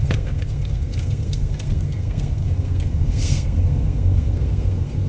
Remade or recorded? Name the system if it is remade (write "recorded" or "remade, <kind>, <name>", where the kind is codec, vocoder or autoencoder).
remade, codec, SNAC